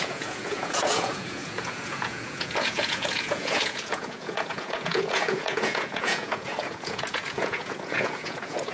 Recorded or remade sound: remade